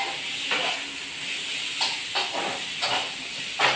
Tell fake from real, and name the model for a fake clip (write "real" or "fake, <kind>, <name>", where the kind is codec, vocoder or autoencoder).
real